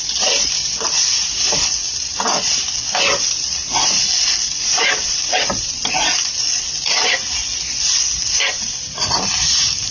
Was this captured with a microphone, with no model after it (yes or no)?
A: no